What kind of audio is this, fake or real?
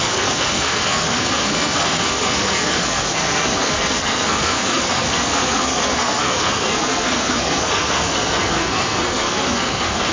fake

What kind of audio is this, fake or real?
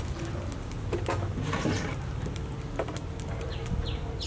real